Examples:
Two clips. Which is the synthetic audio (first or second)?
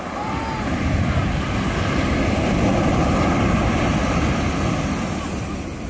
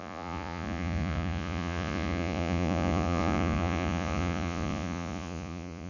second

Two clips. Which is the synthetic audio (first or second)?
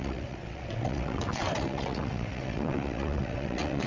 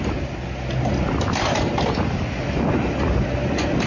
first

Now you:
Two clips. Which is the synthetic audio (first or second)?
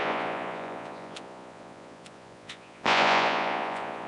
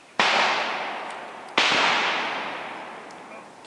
first